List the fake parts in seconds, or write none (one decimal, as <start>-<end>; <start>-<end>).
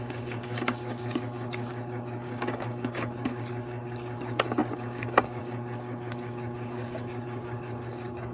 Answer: 0.0-8.3